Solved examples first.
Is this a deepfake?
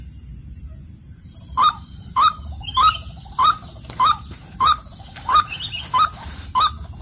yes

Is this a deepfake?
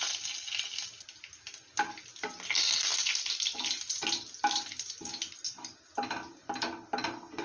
no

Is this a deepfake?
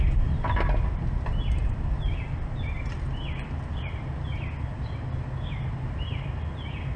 no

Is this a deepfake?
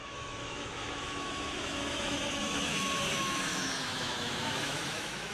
yes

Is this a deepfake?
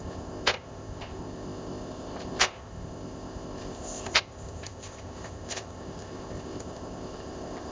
yes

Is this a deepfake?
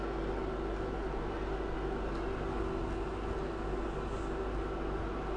no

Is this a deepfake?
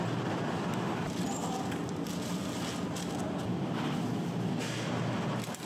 no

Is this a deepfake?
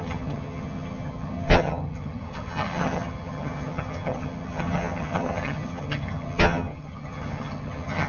yes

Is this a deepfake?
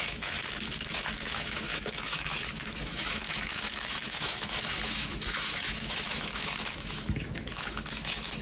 yes